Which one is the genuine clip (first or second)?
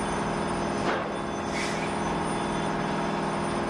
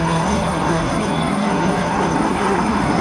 first